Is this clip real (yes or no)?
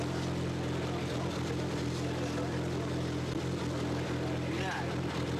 yes